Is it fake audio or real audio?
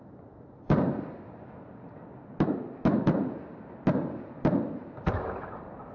real